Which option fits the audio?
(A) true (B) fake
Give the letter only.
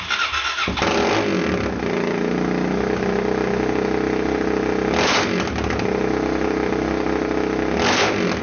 A